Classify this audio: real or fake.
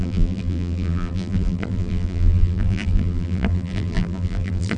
fake